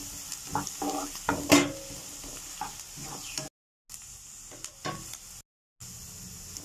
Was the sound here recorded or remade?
recorded